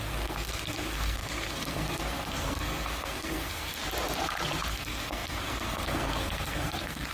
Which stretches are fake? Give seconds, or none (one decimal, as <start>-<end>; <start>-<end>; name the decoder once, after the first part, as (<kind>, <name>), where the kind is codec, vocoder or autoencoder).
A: 0.0-3.8 (codec, SNAC); 4.7-7.1